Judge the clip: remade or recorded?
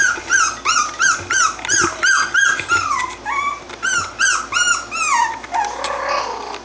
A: recorded